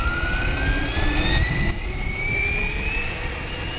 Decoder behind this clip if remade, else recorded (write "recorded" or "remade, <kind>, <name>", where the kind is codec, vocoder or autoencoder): recorded